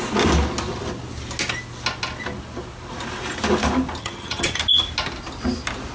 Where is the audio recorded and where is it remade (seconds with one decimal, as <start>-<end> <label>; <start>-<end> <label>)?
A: 0.0-4.0 recorded; 4.0-4.6 remade; 4.6-5.9 recorded